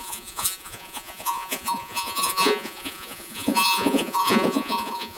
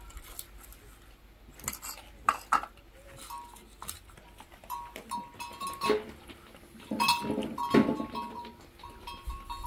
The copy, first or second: first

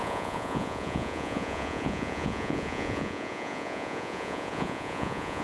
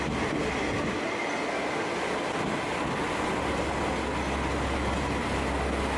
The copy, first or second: first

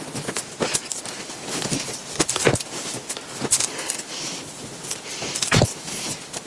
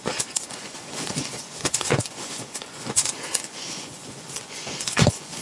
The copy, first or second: second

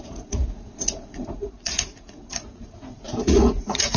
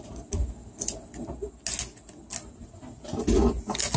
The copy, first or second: first